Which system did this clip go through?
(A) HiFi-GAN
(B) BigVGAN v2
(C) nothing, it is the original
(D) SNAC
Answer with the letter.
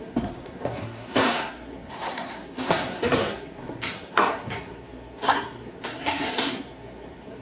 D